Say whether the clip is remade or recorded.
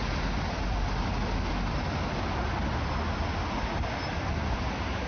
recorded